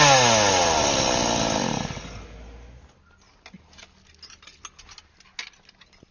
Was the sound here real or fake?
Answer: real